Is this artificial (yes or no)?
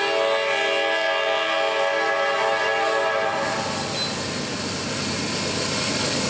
no